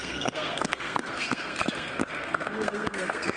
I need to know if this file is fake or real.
fake